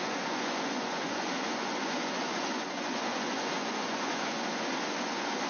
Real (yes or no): no